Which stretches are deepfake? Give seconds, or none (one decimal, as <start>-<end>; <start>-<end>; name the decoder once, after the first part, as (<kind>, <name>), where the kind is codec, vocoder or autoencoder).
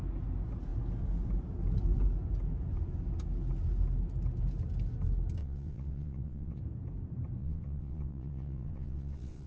5.4-6.6 (vocoder, WaveNeXt); 7.4-9.5